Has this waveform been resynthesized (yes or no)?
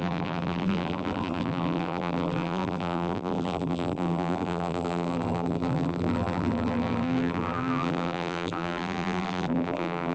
yes